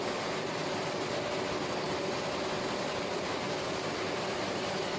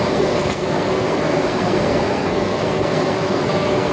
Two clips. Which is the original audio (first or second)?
first